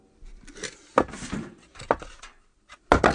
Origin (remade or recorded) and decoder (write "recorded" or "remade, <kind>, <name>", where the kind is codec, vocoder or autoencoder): recorded